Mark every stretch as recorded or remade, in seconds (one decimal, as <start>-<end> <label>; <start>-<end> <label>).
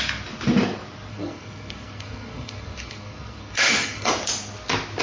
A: 0.0-1.1 recorded; 1.1-4.1 remade; 4.1-5.0 recorded